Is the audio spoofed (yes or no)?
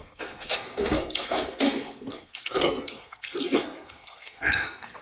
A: yes